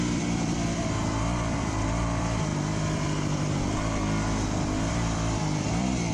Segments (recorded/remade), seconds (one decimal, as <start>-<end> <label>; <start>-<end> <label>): 0.0-2.5 remade; 2.5-4.9 recorded; 4.9-6.1 remade